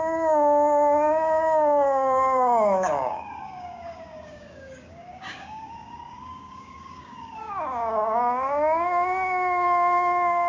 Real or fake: fake